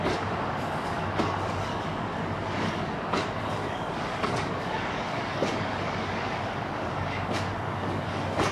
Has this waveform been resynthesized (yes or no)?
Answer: yes